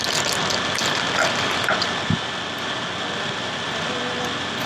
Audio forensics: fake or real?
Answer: real